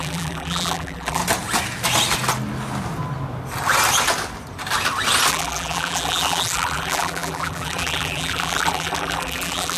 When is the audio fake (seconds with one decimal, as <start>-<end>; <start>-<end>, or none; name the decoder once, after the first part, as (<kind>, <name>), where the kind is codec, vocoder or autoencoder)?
0.0-1.2 (vocoder, BigVGAN v2); 5.3-9.8